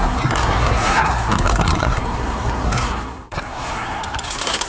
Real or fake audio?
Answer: fake